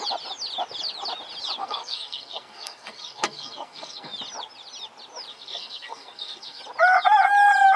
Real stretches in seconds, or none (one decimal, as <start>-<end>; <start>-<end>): 0.0-1.6; 4.1-5.3; 6.6-7.8